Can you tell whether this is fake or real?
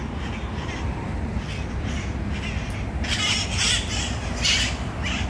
real